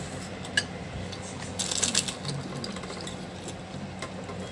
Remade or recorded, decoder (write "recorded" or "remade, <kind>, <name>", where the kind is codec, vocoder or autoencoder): recorded